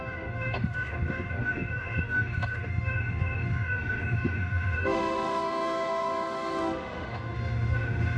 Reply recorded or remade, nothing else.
remade